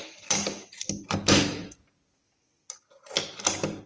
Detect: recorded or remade recorded